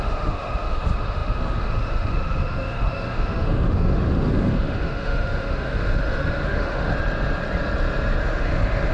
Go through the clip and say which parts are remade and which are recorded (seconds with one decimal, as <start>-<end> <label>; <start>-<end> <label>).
0.0-6.9 remade; 6.9-8.2 recorded; 8.2-8.9 remade